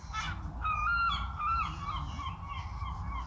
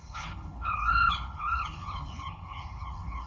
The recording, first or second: first